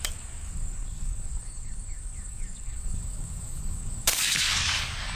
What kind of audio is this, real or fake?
fake